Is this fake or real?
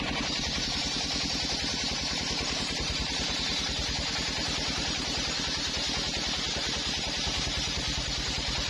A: fake